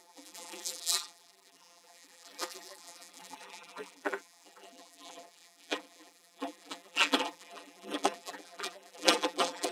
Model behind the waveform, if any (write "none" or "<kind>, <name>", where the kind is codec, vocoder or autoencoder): vocoder, BigVGAN v2